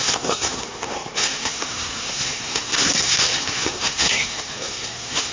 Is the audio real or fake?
fake